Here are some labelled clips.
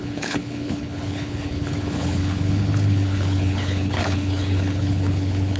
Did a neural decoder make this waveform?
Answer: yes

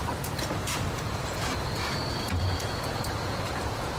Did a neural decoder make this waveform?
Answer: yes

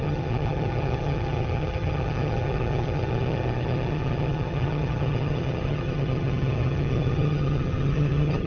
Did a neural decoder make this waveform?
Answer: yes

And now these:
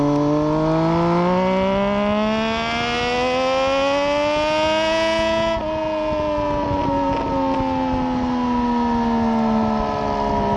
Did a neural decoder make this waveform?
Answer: no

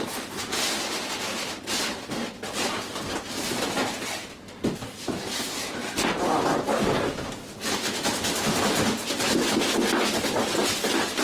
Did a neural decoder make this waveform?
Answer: no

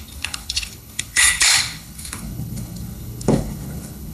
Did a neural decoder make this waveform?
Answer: yes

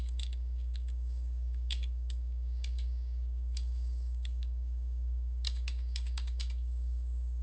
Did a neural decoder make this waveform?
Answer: yes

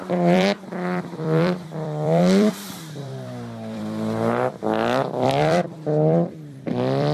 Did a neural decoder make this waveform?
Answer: yes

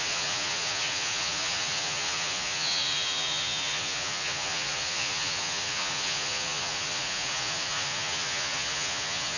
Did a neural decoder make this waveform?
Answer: yes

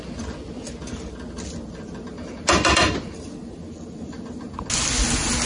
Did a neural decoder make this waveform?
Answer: no